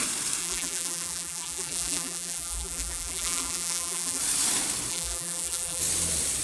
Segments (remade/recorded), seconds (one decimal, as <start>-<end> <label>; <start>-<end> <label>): 0.0-0.4 recorded; 0.4-4.2 remade; 4.2-4.9 recorded; 4.9-5.8 remade; 5.8-6.4 recorded